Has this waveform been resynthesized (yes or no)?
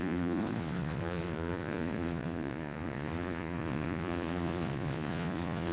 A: yes